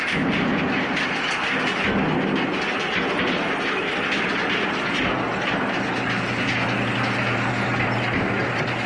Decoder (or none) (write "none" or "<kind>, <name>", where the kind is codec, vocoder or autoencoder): none